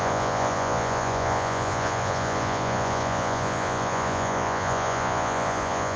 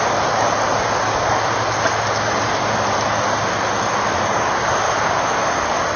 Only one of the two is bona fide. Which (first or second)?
second